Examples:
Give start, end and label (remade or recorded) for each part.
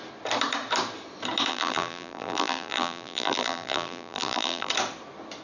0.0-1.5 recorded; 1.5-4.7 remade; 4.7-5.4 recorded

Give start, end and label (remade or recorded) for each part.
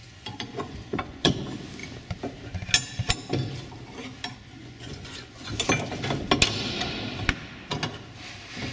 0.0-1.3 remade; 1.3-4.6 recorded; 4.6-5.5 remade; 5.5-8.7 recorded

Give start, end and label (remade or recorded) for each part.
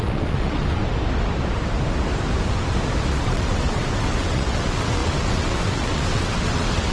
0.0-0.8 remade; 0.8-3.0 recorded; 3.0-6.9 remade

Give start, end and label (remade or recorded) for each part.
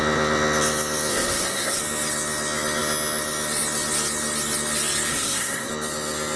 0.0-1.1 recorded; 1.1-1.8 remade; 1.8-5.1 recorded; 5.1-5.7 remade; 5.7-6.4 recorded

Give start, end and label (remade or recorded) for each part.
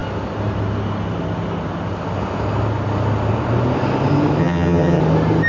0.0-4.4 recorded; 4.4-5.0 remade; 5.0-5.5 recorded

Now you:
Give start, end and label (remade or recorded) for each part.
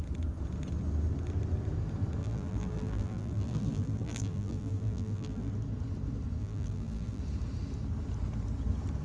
0.0-2.2 recorded; 2.2-5.5 remade; 5.5-6.4 recorded; 6.4-7.2 remade; 7.2-9.0 recorded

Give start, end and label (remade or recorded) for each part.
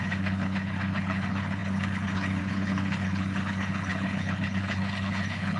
0.0-5.6 remade